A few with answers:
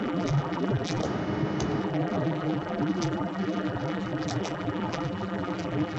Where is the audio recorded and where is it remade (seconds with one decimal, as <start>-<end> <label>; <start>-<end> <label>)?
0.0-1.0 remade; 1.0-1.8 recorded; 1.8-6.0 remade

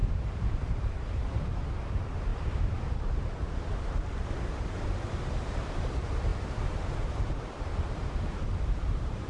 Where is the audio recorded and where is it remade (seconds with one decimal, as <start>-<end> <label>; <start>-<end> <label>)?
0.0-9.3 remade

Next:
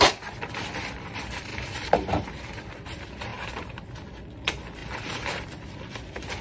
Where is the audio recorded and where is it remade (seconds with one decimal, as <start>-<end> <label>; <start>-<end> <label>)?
0.0-1.5 recorded; 1.5-2.7 remade; 2.7-6.4 recorded